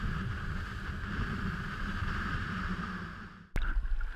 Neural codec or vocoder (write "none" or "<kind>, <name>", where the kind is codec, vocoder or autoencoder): none